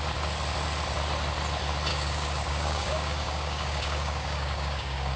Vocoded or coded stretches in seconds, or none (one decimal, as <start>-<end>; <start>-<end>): 1.9-5.2